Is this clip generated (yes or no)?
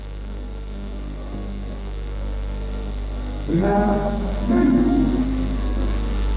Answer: yes